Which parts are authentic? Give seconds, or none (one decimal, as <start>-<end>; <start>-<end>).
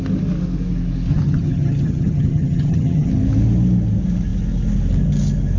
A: 0.0-1.1; 3.1-5.6